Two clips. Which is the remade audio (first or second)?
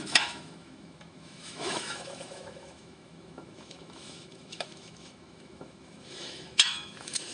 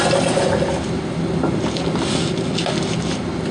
first